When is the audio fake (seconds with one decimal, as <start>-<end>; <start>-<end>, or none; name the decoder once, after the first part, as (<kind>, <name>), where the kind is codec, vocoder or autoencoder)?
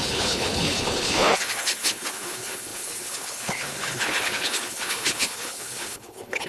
0.0-6.5 (codec, HILCodec)